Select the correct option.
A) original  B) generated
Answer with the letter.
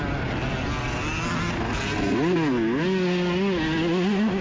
A